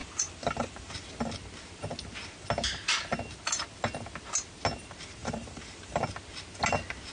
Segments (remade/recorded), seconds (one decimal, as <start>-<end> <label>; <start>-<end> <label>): 0.0-0.9 remade; 0.9-5.2 recorded; 5.2-6.0 remade; 6.0-7.1 recorded